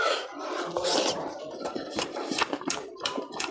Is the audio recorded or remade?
remade